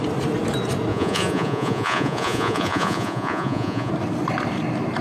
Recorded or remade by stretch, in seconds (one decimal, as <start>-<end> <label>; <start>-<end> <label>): 0.0-0.9 recorded; 0.9-3.9 remade; 3.9-5.0 recorded